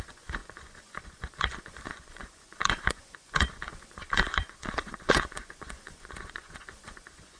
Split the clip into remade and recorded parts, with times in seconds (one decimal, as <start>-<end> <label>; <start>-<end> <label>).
0.0-7.4 remade

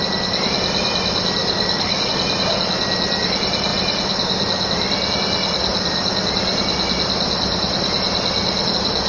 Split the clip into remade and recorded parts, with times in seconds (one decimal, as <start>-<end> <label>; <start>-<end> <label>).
0.0-1.4 recorded; 1.4-2.1 remade; 2.1-9.1 recorded